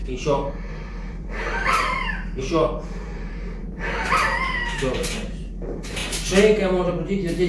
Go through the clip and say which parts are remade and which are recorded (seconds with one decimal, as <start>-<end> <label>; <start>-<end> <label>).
0.0-6.0 remade; 6.0-6.9 recorded; 6.9-7.5 remade